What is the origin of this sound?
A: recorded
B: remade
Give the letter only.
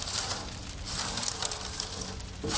A